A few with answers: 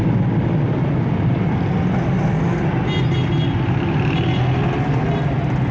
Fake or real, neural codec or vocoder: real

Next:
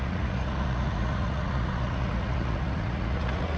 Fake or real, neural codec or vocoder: fake, vocoder, Vocos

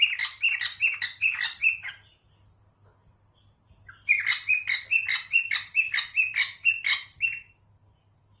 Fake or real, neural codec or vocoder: real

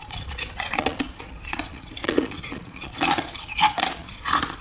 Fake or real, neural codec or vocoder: fake, vocoder, Vocos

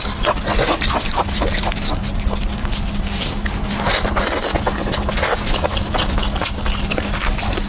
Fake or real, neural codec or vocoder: real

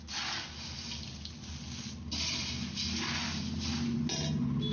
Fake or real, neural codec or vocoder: real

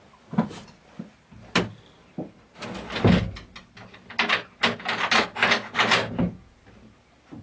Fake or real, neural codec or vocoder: real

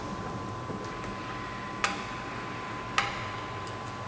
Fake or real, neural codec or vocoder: real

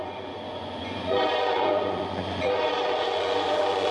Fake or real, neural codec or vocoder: fake, vocoder, Vocos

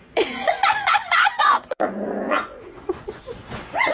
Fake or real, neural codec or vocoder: fake, vocoder, Vocos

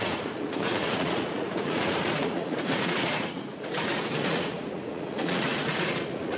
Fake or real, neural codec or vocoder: fake, vocoder, Vocos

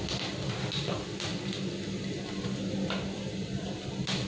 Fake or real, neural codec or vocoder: real